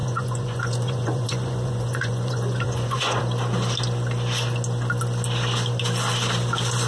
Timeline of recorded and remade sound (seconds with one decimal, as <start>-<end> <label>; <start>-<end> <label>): 0.0-3.2 remade; 3.2-6.9 recorded